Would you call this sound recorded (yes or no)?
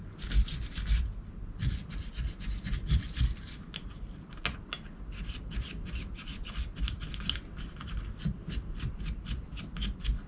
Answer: yes